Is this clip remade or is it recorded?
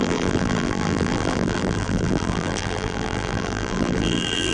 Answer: remade